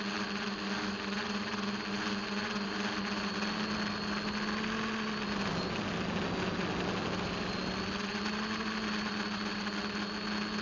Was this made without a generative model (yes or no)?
yes